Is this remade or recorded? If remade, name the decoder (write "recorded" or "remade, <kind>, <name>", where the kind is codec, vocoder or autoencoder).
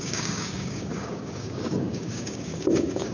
remade, codec, DAC